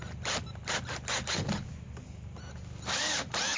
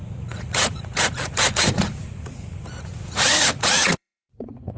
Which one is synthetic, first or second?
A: second